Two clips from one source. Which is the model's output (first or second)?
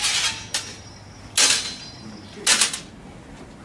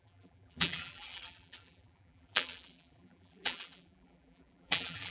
second